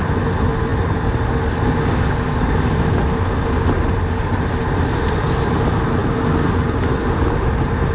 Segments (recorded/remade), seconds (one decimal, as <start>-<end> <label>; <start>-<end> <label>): 0.0-7.9 recorded